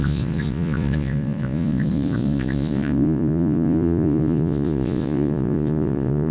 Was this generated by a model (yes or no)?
yes